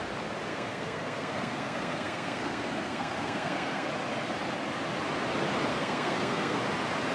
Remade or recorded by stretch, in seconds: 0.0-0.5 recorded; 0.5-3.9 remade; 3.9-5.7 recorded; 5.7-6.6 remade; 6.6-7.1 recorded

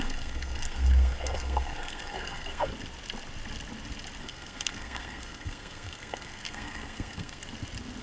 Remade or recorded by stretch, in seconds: 0.0-2.7 remade; 2.7-4.2 recorded; 4.2-7.4 remade; 7.4-8.0 recorded

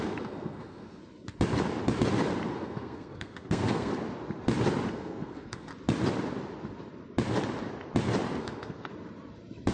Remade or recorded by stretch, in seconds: 0.0-1.0 remade; 1.0-2.5 recorded; 2.5-3.9 remade; 3.9-4.9 recorded; 4.9-5.7 remade; 5.7-8.4 recorded; 8.4-8.9 remade; 8.9-9.7 recorded